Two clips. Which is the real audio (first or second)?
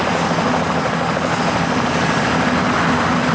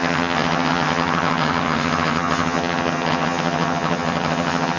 first